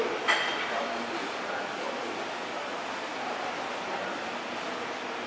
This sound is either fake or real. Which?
fake